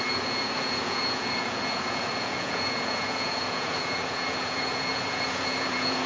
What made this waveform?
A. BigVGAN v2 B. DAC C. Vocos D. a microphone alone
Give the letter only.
C